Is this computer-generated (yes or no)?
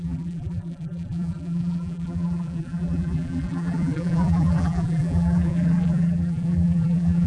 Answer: yes